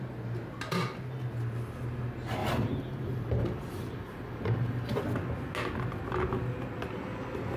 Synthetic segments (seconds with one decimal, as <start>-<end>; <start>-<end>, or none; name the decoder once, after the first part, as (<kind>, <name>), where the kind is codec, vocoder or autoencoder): 2.4-5.0 (vocoder, BigVGAN v2)

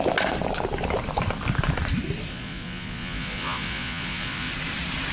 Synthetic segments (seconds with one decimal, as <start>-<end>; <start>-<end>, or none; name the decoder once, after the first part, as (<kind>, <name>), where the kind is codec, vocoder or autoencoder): 2.3-4.5 (vocoder, Vocos)

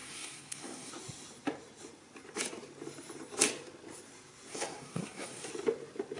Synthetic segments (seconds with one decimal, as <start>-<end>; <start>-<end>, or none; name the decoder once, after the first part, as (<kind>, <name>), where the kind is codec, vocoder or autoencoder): 0.0-0.9 (codec, SNAC); 4.5-5.5

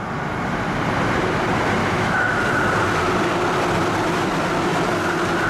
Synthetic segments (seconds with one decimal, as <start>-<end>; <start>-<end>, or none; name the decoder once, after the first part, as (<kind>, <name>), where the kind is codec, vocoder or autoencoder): 1.8-2.4 (autoencoder, DAC-VAE)

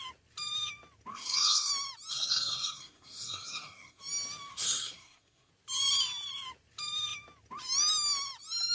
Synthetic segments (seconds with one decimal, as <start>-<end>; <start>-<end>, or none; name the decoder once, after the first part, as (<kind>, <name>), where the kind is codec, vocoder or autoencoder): 1.1-1.7 (codec, SNAC); 2.1-4.0; 4.5-5.5